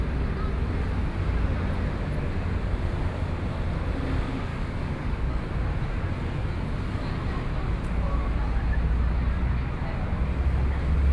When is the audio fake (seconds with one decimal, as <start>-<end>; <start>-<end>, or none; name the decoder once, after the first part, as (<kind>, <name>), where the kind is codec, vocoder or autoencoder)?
4.5-5.4 (codec, DAC)